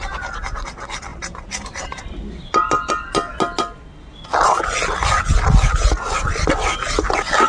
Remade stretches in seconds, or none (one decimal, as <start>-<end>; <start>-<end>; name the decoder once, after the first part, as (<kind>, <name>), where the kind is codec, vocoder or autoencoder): none